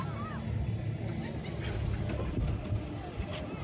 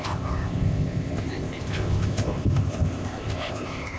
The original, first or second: first